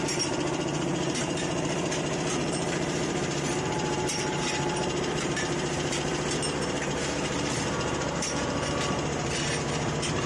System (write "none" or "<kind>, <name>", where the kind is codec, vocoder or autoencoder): vocoder, BigVGAN v2